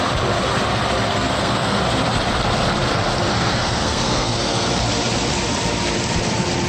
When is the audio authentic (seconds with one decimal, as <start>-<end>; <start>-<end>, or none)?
0.0-1.1; 1.8-3.3; 4.7-6.7